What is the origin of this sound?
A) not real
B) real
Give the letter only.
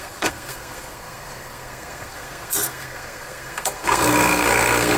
A